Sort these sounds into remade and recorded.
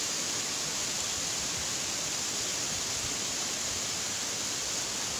recorded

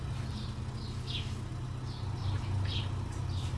recorded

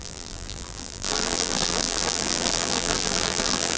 remade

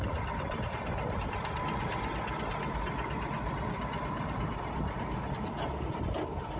remade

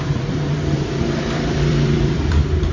remade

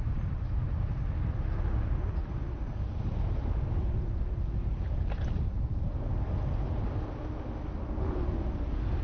recorded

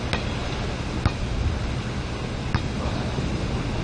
recorded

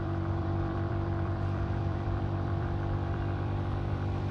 remade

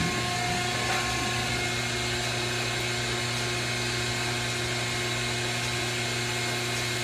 recorded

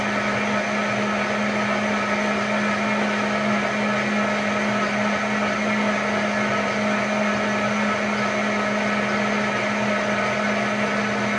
recorded